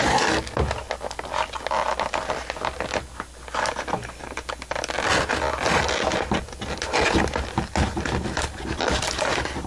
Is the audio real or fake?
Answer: real